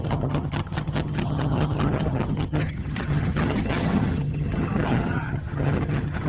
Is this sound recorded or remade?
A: remade